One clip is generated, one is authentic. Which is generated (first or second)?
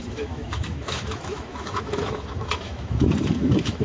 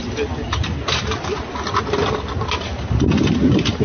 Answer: first